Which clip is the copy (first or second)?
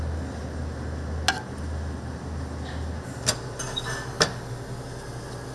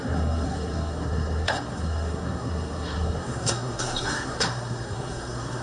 second